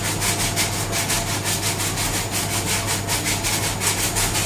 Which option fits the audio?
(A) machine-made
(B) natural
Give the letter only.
B